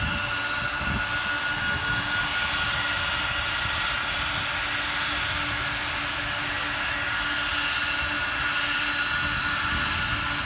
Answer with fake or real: real